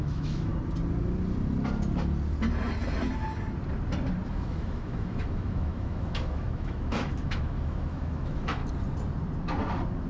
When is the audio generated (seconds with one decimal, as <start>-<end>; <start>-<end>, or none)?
0.0-0.5; 4.3-8.6